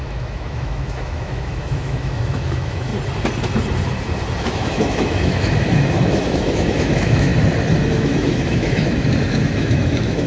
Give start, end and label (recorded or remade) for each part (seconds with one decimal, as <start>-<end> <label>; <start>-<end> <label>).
0.0-2.9 remade; 2.9-4.4 recorded; 4.4-7.3 remade; 7.3-7.9 recorded; 7.9-10.3 remade